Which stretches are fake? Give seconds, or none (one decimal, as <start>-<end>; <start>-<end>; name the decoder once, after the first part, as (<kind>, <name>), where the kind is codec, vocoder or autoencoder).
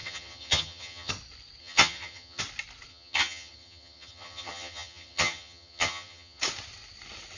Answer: 0.0-1.1 (vocoder, HiFi-GAN); 1.6-2.4; 2.9-6.4